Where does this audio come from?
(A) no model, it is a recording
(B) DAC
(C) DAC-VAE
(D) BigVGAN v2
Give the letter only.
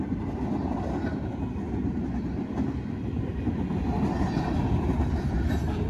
A